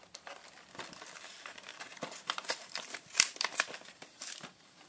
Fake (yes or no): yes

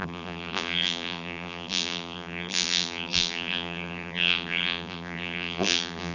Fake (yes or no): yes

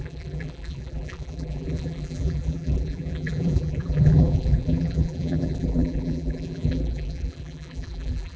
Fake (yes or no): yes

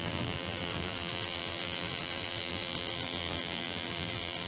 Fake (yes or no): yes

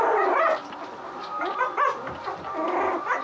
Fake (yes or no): no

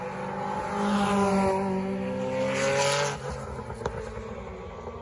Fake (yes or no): no